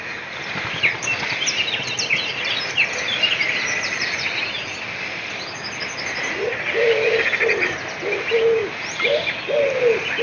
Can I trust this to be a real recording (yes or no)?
yes